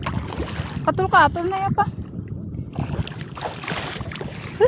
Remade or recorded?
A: recorded